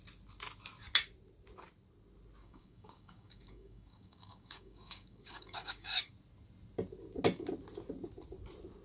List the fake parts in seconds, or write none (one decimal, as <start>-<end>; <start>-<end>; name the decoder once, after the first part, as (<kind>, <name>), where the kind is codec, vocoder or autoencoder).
2.4-6.1 (codec, DAC)